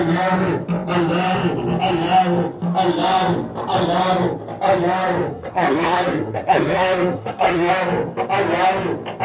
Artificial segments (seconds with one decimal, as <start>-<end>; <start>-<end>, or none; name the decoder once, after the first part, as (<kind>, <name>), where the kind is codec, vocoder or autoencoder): 5.3-7.7 (codec, SNAC)